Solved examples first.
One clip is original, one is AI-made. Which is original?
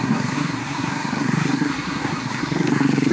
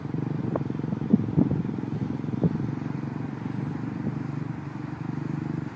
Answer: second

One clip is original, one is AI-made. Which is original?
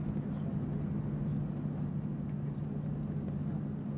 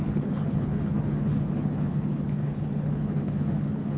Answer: first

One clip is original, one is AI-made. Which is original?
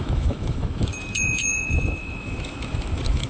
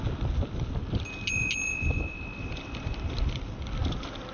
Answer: second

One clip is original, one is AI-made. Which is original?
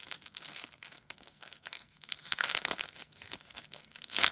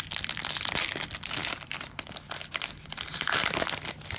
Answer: second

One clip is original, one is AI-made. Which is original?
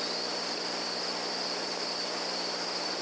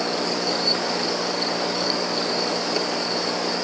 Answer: first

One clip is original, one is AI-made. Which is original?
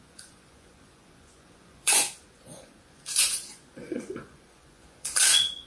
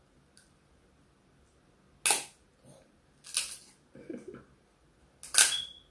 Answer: second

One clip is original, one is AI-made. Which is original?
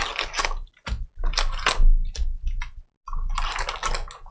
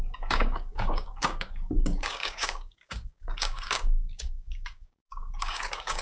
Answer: first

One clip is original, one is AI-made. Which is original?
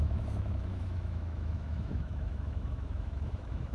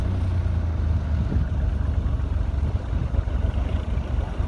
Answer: second